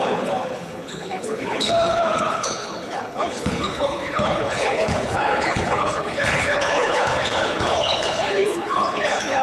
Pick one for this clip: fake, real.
fake